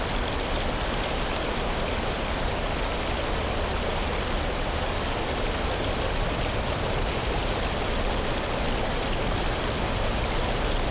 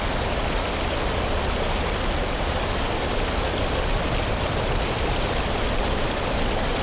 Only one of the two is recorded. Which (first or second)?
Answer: first